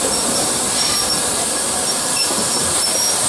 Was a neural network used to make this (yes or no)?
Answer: yes